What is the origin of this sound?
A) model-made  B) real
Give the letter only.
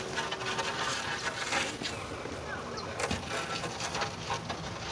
B